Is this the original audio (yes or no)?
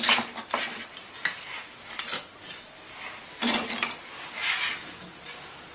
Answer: yes